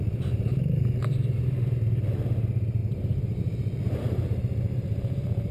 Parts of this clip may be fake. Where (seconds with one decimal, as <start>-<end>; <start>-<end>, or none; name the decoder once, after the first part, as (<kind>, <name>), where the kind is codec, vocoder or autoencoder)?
0.0-2.8 (vocoder, BigVGAN v2); 3.4-5.5

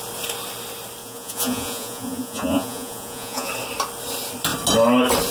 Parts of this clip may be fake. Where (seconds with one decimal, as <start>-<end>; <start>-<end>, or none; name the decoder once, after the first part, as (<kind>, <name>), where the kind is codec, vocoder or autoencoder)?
1.0-3.5 (vocoder, Vocos)

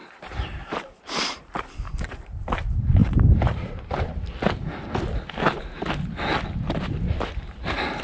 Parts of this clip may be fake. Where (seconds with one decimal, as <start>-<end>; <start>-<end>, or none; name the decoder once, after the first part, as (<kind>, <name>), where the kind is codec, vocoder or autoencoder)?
0.0-2.2 (vocoder, BigVGAN v2); 3.0-4.2